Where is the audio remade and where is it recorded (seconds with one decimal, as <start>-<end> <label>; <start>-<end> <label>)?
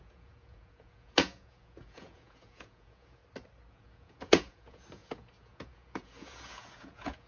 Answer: 0.0-3.2 remade; 3.2-3.7 recorded; 3.7-7.3 remade